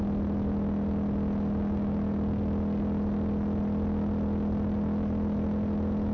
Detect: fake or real real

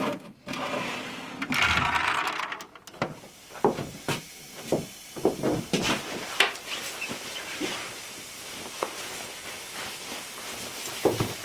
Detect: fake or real real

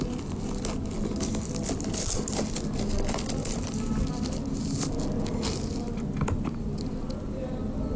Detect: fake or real real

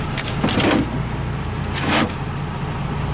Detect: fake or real real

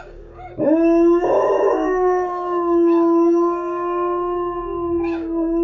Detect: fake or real fake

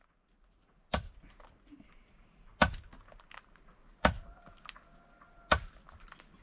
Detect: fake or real real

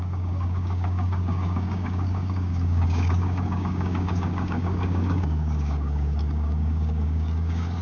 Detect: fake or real fake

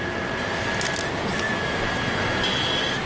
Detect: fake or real real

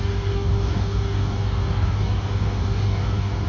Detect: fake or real fake